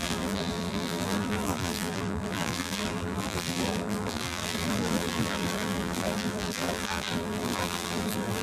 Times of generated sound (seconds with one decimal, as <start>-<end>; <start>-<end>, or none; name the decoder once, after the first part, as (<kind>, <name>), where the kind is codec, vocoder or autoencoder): 0.0-8.4 (vocoder, BigVGAN v2)